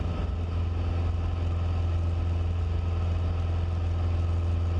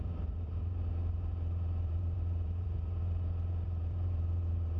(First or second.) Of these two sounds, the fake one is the second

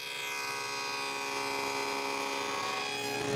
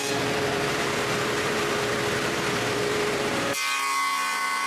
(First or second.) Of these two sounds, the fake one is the second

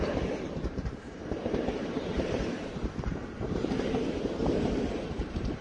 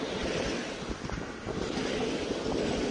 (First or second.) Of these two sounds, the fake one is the first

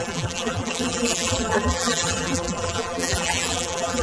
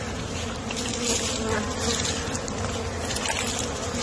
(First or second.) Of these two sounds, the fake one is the first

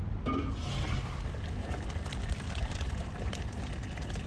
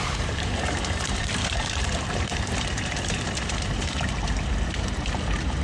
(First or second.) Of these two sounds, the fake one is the second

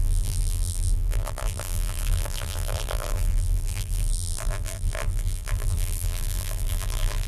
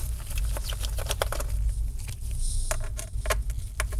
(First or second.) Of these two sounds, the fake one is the first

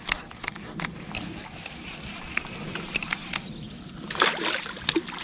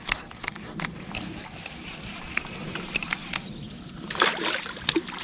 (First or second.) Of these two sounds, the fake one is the second